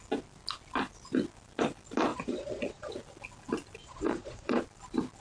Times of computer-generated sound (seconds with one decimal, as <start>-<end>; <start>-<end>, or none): 2.1-2.9; 3.8-4.6